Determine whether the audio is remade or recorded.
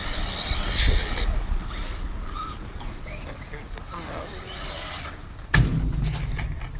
recorded